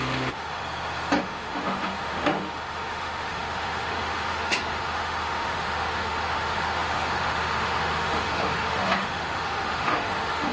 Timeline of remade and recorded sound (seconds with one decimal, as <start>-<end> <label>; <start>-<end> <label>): 0.0-0.6 remade; 0.6-1.2 recorded; 1.2-10.5 remade